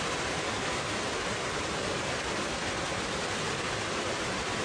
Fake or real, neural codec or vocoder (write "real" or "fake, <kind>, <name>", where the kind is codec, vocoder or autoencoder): real